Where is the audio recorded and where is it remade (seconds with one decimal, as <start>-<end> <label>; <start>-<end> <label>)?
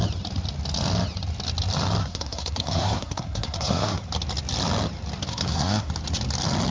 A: 0.0-2.0 recorded; 2.0-4.0 remade; 4.0-5.3 recorded; 5.3-5.9 remade; 5.9-6.7 recorded